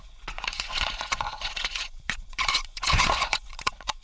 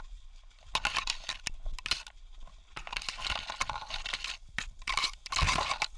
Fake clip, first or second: first